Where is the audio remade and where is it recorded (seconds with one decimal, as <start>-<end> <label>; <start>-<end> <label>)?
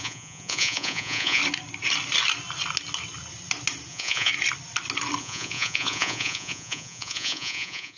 0.0-1.4 remade; 1.4-3.9 recorded; 3.9-4.3 remade; 4.3-5.2 recorded; 5.2-8.0 remade